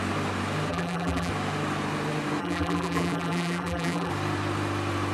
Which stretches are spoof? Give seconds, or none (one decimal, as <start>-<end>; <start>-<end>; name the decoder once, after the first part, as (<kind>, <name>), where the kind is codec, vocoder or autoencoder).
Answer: 0.7-1.3 (vocoder, BigVGAN v2); 2.4-4.1